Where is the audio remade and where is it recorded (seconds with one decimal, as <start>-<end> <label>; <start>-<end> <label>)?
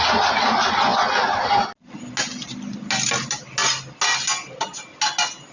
0.0-5.5 recorded